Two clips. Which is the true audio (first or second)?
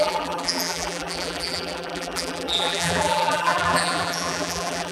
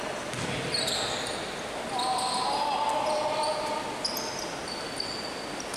second